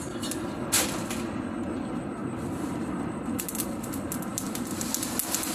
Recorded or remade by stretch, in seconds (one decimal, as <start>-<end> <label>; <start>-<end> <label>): 0.0-2.2 recorded; 2.2-3.4 remade; 3.4-4.3 recorded; 4.3-4.9 remade; 4.9-5.5 recorded